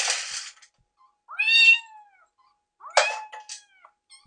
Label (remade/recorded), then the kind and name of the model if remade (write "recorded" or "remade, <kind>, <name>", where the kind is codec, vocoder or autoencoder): recorded